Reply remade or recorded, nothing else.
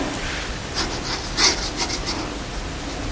recorded